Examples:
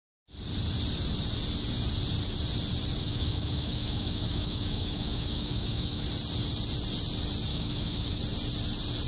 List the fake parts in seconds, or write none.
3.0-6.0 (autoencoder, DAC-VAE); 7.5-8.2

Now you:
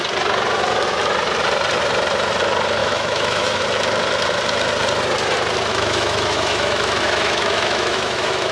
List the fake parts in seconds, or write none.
2.8-3.6 (autoencoder, DAC-VAE); 5.7-8.5

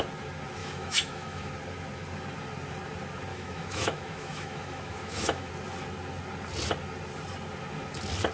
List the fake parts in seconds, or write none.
0.6-1.5 (autoencoder, DAC-VAE); 3.3-5.5

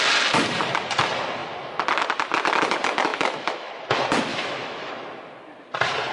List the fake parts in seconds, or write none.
3.1-3.7 (autoencoder, DAC-VAE); 4.3-4.9